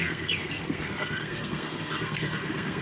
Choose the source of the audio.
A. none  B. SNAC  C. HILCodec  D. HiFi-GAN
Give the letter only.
B